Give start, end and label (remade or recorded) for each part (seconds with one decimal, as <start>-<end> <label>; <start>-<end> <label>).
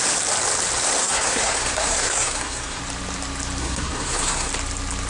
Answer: 0.0-1.0 recorded; 1.0-2.8 remade; 2.8-3.6 recorded; 3.6-4.5 remade; 4.5-5.1 recorded